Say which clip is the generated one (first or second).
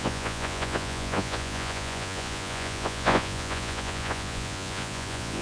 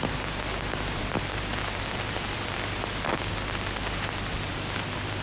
first